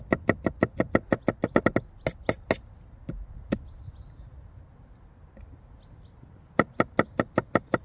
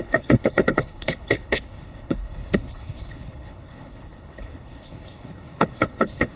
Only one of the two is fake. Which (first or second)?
second